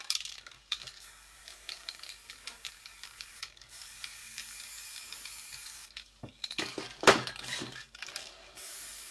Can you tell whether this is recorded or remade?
remade